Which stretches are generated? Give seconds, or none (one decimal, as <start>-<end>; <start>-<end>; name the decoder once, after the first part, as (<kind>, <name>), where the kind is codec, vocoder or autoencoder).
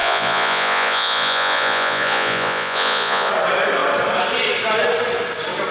0.0-3.3 (vocoder, Vocos)